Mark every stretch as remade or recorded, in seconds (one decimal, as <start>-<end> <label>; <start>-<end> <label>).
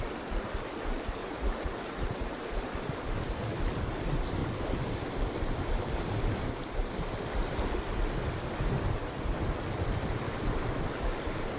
0.0-1.2 recorded; 1.2-2.4 remade; 2.4-11.6 recorded